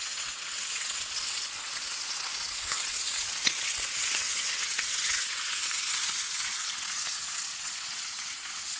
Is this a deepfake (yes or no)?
yes